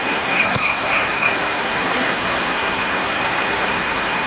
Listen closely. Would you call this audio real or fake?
fake